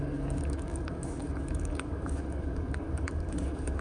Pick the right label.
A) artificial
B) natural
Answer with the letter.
A